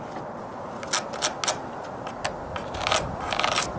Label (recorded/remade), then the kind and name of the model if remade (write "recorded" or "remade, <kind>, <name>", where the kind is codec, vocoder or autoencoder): recorded